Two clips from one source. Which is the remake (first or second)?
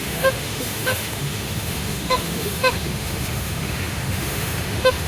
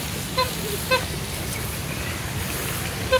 first